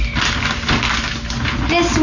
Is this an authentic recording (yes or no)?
yes